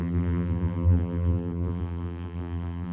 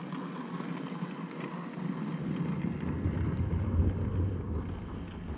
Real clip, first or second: second